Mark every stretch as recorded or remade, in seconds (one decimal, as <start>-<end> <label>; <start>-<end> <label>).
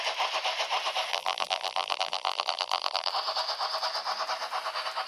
0.0-1.1 recorded; 1.1-3.1 remade; 3.1-5.1 recorded